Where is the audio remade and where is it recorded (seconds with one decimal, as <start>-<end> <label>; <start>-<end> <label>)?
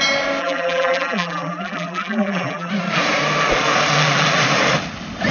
0.0-0.4 recorded; 0.4-2.7 remade; 2.7-5.3 recorded